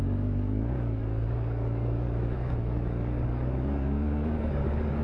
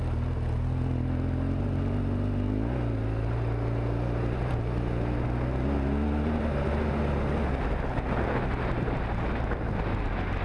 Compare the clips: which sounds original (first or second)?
second